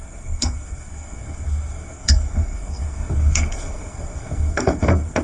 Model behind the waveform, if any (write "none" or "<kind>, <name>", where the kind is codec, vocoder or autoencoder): codec, SNAC